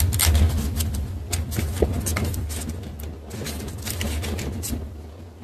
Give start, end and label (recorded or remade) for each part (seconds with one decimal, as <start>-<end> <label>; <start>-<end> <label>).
0.0-5.4 recorded

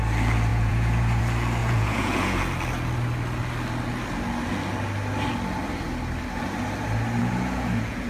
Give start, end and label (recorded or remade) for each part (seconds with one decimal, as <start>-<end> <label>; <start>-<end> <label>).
0.0-0.5 recorded; 0.5-1.2 remade; 1.2-1.6 recorded; 1.6-2.4 remade; 2.4-7.2 recorded; 7.2-8.1 remade

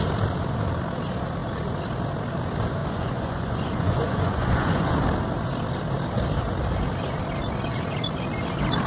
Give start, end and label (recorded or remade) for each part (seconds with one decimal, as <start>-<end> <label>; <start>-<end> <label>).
0.0-2.8 recorded; 2.8-5.0 remade; 5.0-8.9 recorded

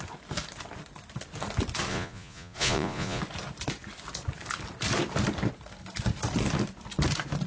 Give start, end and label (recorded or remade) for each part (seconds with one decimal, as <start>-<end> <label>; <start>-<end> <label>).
0.0-1.9 recorded; 1.9-3.2 remade; 3.2-7.5 recorded